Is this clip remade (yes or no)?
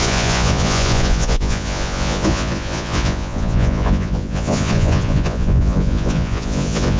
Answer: yes